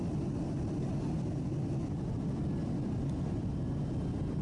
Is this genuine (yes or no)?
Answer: yes